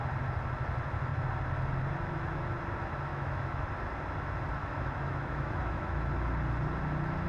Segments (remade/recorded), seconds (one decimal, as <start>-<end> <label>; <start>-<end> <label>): 0.0-3.1 recorded; 3.1-3.7 remade; 3.7-4.6 recorded; 4.6-6.1 remade; 6.1-7.3 recorded